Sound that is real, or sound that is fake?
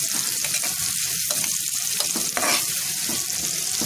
real